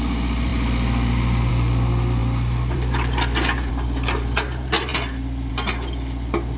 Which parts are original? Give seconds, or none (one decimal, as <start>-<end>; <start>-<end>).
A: 0.0-2.2; 3.7-6.6